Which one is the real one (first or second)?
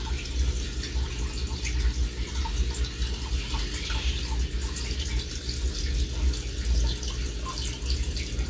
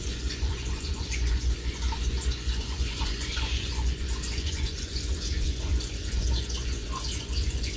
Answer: first